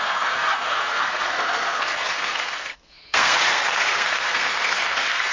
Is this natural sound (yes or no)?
no